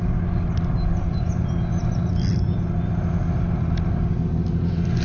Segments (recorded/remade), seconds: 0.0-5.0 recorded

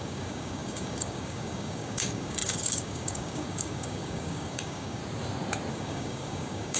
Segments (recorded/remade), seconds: 0.0-5.0 remade; 5.0-5.7 recorded; 5.7-6.8 remade